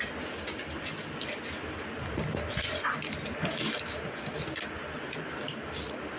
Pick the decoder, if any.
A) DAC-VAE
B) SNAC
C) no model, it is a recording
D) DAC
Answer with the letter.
C